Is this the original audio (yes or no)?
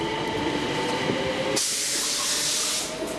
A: yes